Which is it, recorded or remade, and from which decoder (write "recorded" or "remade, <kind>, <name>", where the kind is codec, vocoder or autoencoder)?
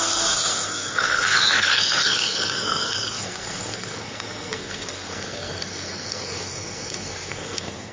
remade, codec, SNAC